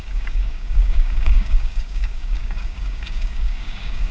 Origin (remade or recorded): remade